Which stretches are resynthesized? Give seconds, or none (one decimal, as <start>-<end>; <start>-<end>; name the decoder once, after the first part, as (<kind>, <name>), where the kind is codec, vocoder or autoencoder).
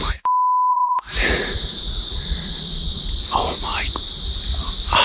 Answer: 0.7-2.2 (vocoder, Vocos)